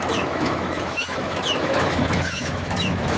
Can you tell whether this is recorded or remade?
remade